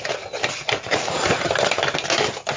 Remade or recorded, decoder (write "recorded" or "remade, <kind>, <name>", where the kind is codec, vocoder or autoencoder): recorded